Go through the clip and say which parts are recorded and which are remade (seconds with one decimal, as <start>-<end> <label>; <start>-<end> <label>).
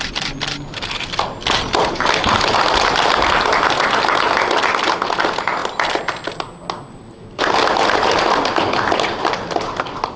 0.0-10.2 recorded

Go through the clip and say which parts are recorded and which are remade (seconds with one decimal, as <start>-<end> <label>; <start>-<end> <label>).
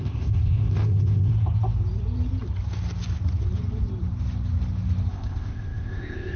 0.0-1.3 remade; 1.3-5.1 recorded; 5.1-6.4 remade